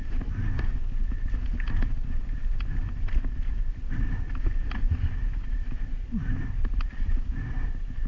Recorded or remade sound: recorded